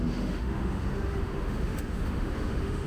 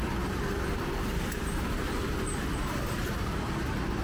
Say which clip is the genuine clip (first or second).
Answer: second